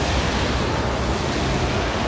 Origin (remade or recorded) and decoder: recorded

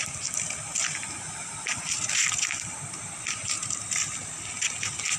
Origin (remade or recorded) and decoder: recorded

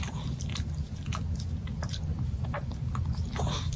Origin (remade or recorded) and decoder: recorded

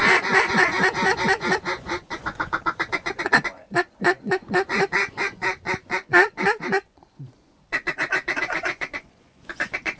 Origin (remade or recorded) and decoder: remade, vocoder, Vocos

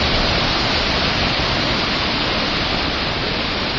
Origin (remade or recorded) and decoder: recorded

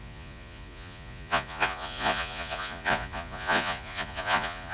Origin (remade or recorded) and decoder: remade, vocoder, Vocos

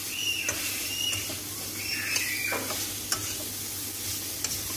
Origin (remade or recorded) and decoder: recorded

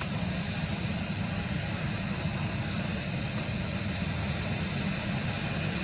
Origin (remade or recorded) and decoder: recorded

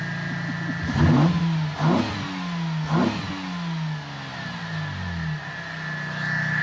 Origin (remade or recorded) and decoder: recorded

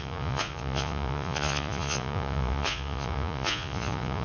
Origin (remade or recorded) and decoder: remade, vocoder, Vocos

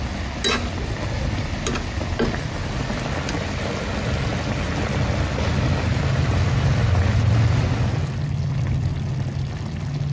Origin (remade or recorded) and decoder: recorded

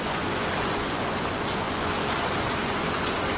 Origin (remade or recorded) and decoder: remade, vocoder, Vocos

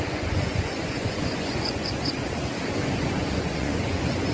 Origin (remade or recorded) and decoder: remade, vocoder, Vocos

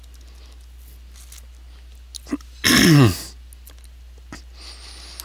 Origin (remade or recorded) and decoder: recorded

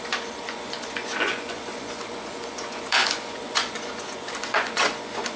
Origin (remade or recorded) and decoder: remade, vocoder, Vocos